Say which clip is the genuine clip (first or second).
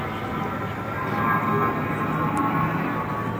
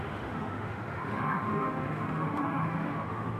first